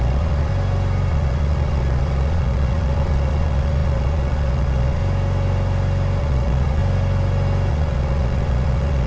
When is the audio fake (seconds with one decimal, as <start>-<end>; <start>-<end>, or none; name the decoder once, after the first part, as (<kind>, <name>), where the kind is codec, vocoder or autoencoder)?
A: 0.0-0.5 (vocoder, Vocos); 1.1-5.0; 6.2-6.8; 7.7-9.1